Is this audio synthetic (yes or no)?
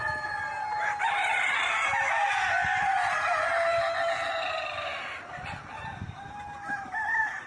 no